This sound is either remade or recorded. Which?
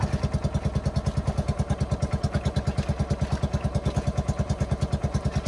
recorded